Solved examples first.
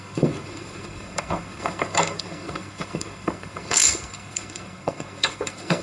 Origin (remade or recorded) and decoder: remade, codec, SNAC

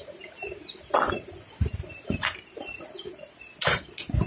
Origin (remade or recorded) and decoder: recorded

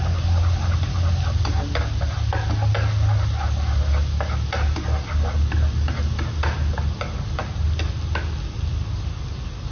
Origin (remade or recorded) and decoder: recorded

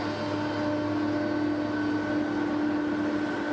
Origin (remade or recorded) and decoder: recorded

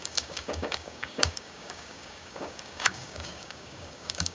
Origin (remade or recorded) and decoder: remade, codec, DAC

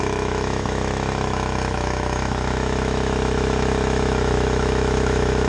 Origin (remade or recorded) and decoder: remade, autoencoder, DAC-VAE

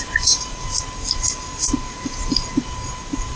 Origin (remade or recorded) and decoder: remade, vocoder, BigVGAN v2